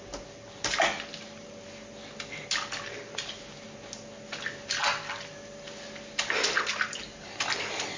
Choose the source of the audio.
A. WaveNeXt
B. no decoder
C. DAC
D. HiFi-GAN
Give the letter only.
B